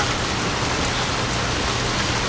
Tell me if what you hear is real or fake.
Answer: real